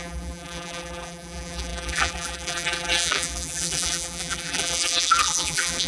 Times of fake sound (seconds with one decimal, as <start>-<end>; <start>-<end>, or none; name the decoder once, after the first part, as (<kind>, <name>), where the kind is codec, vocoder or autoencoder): 0.0-5.9 (vocoder, BigVGAN v2)